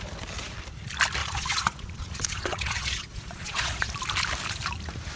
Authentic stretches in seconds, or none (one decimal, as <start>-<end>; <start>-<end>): 0.0-1.2; 3.9-5.2